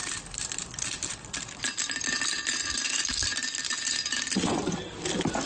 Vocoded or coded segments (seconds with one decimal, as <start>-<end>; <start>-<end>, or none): none